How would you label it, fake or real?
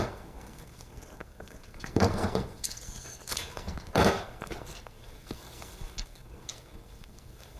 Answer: fake